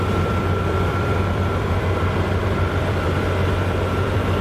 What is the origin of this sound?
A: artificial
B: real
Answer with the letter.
A